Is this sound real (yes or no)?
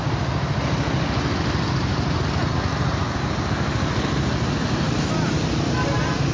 yes